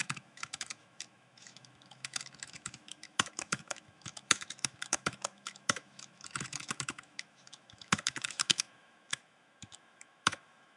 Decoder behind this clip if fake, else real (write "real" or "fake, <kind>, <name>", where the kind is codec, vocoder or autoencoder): fake, autoencoder, DAC-VAE